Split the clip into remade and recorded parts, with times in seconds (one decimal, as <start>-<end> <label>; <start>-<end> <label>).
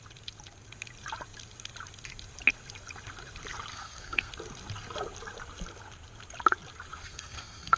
0.0-3.7 recorded; 3.7-4.3 remade; 4.3-7.0 recorded; 7.0-7.8 remade